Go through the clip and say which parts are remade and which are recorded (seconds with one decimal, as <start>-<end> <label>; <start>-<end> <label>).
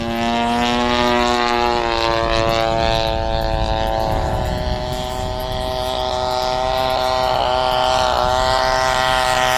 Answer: 0.0-9.6 recorded